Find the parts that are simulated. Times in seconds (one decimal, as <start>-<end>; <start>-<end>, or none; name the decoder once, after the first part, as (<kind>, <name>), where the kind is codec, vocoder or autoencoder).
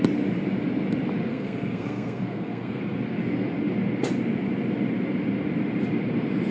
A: 1.3-2.8 (codec, SNAC)